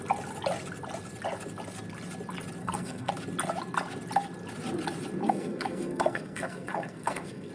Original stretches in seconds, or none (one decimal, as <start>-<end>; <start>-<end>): 0.0-2.6; 3.1-5.2